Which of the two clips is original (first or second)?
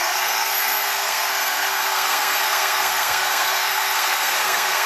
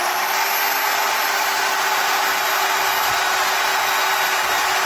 second